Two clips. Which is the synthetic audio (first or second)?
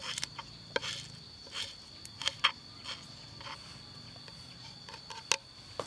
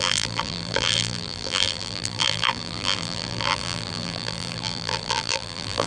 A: second